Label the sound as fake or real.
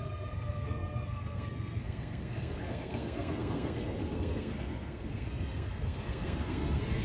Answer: fake